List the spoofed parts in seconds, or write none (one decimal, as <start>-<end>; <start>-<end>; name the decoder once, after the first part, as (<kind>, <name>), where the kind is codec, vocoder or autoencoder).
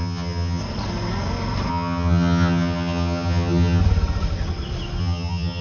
0.0-0.6 (vocoder, HiFi-GAN); 1.7-3.8; 5.0-5.6